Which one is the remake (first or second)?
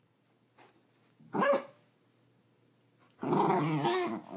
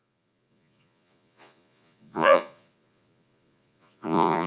second